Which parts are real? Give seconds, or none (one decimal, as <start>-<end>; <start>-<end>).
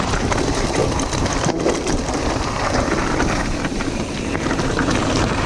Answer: 0.0-0.8; 4.1-5.5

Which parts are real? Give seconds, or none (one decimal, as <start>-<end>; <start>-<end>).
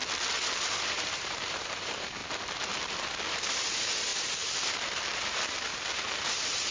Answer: 0.0-0.7; 2.2-3.5; 4.1-4.7